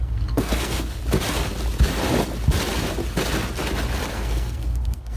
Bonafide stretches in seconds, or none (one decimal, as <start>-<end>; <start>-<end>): 1.0-4.1